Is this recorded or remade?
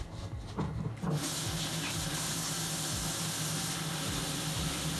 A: recorded